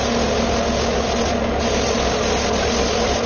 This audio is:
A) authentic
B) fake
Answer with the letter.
A